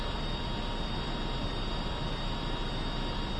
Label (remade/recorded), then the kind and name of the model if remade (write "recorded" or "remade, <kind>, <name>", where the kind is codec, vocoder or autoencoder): remade, vocoder, BigVGAN v2